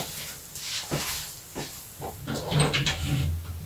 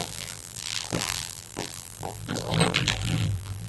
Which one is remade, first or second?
second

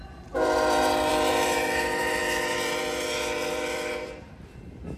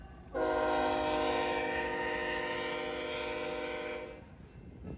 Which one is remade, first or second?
first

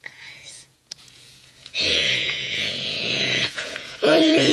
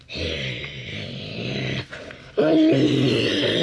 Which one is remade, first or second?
first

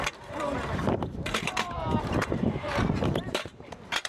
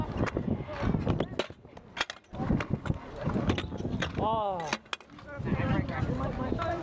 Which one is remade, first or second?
first